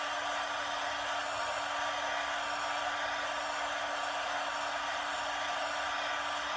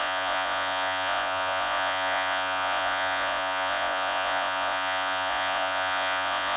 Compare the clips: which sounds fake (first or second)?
second